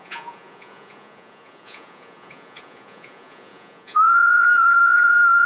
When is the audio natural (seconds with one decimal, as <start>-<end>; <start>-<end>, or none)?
none